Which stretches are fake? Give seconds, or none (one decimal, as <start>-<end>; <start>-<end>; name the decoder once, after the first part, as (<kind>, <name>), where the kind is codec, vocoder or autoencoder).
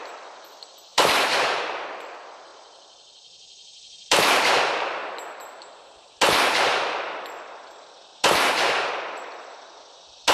0.9-1.6 (vocoder, BigVGAN v2); 2.5-4.6; 5.0-5.9; 8.1-8.9